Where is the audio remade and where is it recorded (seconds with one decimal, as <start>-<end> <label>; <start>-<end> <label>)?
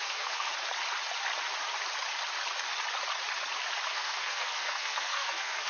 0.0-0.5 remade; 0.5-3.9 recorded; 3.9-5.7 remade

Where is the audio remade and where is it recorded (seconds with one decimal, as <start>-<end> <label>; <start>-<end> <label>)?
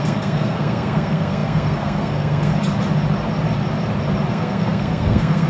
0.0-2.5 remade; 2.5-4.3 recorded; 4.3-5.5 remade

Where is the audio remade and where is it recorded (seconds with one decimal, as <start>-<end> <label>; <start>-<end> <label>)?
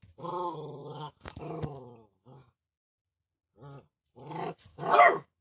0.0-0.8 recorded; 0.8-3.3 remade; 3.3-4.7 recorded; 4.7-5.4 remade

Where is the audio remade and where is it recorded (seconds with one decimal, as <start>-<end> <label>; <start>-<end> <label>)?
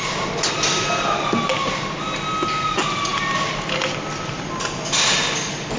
0.0-5.8 recorded